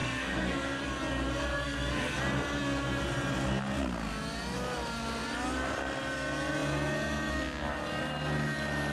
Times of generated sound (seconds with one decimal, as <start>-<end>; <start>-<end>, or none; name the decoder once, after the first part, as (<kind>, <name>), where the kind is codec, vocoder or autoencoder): 0.0-0.8 (codec, SNAC); 1.5-2.2